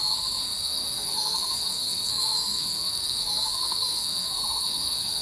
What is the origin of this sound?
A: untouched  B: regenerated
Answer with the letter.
B